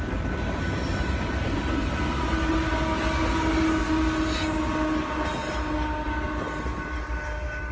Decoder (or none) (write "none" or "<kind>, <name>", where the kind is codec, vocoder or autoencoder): none